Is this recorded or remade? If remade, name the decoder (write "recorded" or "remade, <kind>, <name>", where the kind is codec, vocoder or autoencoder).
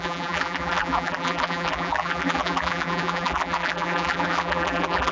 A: remade, vocoder, BigVGAN v2